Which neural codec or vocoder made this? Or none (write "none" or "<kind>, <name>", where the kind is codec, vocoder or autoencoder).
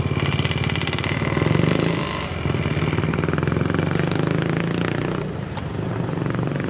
none